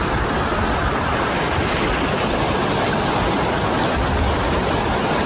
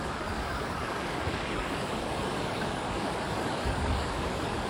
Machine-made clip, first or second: second